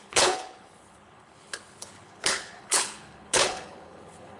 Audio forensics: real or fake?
fake